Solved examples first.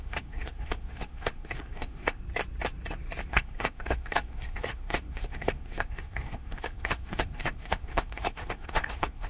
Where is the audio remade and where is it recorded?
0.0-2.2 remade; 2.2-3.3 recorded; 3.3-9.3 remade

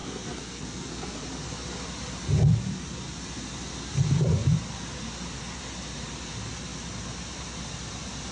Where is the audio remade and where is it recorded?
0.0-1.2 remade; 1.2-8.3 recorded

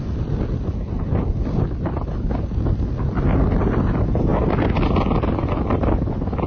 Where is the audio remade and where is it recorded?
0.0-6.5 recorded